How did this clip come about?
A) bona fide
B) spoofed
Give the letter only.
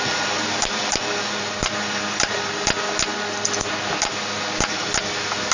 A